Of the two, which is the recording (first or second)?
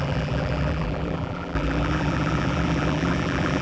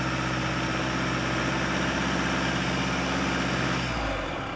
second